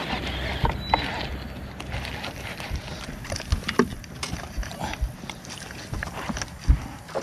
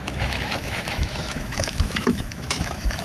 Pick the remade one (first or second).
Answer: second